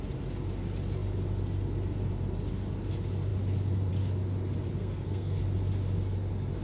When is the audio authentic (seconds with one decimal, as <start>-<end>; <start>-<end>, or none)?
0.0-4.8; 5.4-6.6